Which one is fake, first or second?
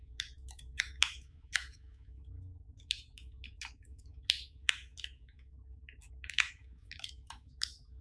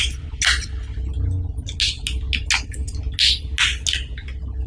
first